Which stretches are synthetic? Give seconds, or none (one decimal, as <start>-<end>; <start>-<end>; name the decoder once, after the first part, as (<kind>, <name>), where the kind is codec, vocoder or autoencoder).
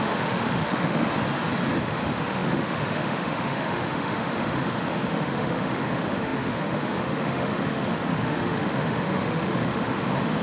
0.0-1.1 (autoencoder, DAC-VAE); 1.8-10.4